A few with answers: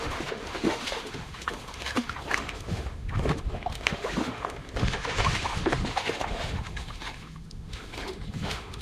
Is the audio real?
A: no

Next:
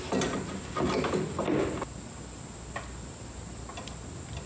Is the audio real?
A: yes